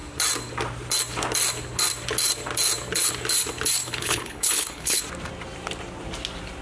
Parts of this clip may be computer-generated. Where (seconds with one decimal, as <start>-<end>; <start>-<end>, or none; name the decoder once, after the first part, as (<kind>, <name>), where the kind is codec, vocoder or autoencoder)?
3.8-5.0 (codec, HILCodec)